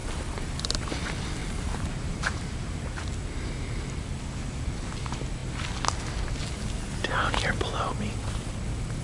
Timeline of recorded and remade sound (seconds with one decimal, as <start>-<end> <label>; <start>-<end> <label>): 0.0-1.4 recorded; 1.4-3.1 remade; 3.1-9.0 recorded